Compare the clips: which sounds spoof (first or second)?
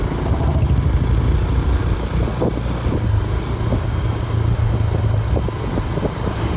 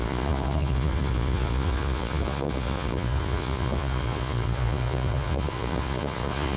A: second